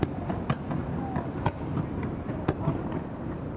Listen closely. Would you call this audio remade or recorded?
recorded